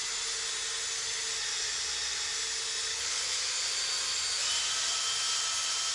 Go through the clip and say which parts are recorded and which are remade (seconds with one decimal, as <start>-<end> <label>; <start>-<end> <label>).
0.0-2.9 recorded; 2.9-3.4 remade; 3.4-5.9 recorded